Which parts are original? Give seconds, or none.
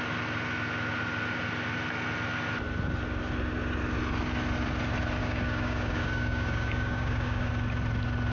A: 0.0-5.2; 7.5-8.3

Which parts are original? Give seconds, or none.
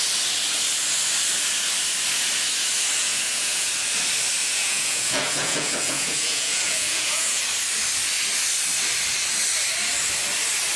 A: 0.0-3.0; 3.7-4.4; 7.4-10.8